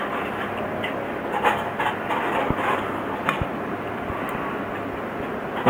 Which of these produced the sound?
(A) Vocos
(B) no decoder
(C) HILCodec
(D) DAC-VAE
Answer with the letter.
B